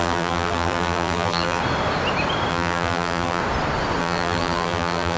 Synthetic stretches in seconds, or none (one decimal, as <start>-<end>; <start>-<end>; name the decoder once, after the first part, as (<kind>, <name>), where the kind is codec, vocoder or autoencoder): 0.0-1.6 (vocoder, BigVGAN v2); 2.5-3.4; 4.0-5.2